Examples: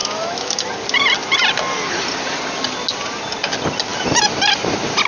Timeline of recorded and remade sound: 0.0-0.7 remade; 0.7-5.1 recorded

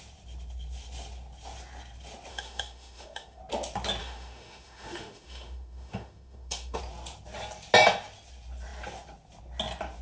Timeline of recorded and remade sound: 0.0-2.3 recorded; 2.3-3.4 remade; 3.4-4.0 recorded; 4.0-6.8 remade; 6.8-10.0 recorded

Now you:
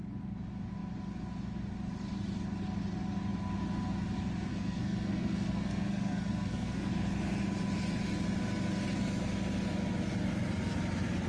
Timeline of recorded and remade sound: 0.0-4.5 recorded; 4.5-6.9 remade; 6.9-11.3 recorded

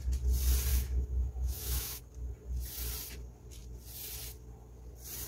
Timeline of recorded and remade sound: 0.0-0.7 recorded; 0.7-2.0 remade; 2.0-5.3 recorded

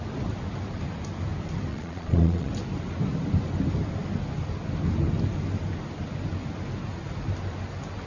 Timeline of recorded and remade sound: 0.0-1.7 recorded; 1.7-2.5 remade; 2.5-8.1 recorded

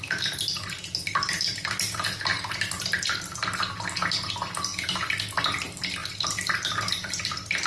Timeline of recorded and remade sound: 0.0-6.0 recorded; 6.0-7.7 remade